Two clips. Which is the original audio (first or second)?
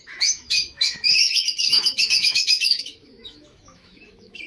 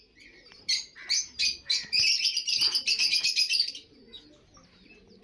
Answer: second